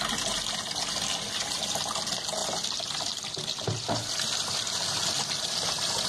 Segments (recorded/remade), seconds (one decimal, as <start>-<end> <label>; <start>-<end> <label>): 0.0-6.1 recorded